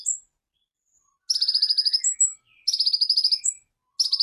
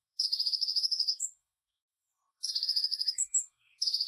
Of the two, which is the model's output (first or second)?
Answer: second